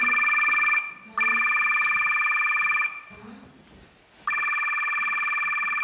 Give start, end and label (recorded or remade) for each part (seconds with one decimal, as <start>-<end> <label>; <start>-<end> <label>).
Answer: 0.0-5.8 recorded